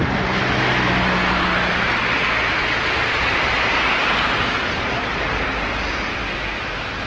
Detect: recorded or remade recorded